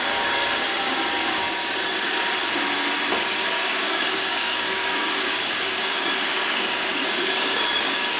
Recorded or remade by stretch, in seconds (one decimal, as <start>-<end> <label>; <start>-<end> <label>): 0.0-1.4 remade; 1.4-3.5 recorded; 3.5-8.2 remade